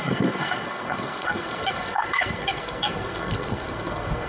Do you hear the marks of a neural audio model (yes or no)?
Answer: yes